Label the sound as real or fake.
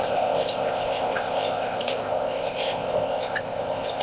fake